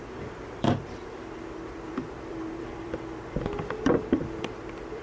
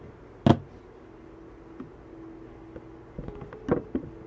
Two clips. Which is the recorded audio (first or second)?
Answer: second